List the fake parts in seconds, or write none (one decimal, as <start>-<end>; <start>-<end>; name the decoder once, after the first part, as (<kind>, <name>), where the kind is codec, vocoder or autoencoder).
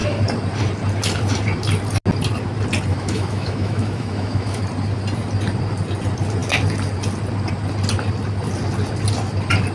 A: 2.9-4.6 (autoencoder, DAC-VAE)